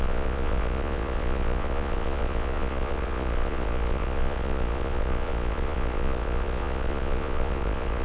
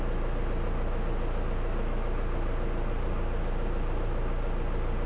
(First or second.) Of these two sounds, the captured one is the second